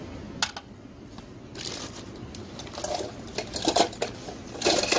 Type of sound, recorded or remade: recorded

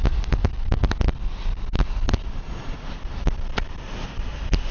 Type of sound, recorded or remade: recorded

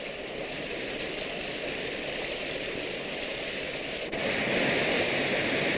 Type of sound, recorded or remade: recorded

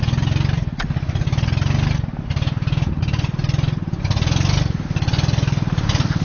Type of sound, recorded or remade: recorded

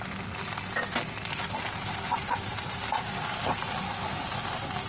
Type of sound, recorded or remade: recorded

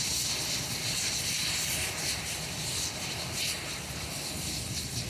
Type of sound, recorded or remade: recorded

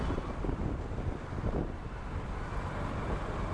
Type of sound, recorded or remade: remade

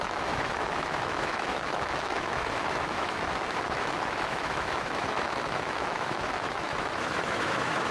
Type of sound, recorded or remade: remade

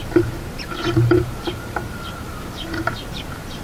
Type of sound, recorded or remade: remade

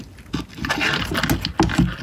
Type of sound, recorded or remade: recorded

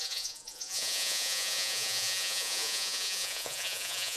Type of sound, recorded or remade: remade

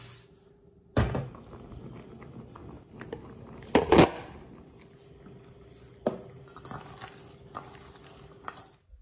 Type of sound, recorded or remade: recorded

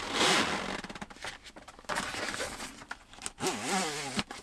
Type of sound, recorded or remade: recorded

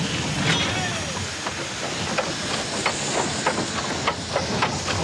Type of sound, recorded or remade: recorded